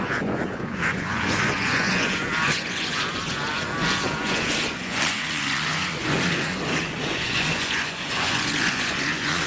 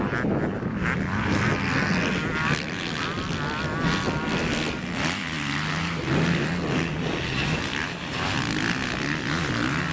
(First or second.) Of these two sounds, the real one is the second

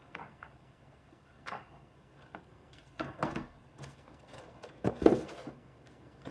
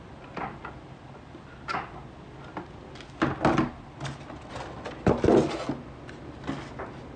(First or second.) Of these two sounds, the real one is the second